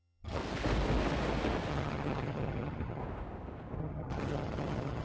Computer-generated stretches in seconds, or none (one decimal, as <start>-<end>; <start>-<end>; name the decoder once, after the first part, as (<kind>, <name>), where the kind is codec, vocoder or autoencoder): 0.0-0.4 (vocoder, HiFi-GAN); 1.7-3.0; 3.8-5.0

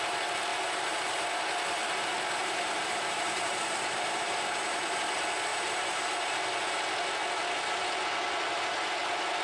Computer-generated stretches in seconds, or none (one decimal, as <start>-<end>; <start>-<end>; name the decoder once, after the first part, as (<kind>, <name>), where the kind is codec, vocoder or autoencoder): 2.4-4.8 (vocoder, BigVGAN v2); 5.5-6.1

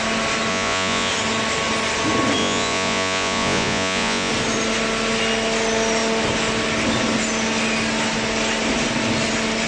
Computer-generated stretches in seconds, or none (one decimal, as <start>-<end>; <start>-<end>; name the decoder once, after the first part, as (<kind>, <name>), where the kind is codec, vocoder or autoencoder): 0.5-1.1 (vocoder, Vocos); 2.4-4.3